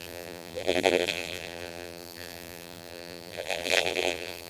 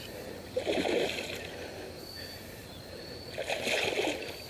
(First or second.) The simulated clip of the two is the first